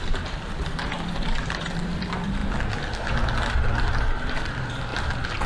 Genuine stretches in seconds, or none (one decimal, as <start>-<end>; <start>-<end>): 2.4-4.0; 4.9-5.5